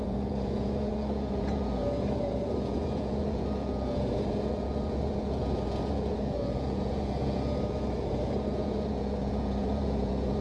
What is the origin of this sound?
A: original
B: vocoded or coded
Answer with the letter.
B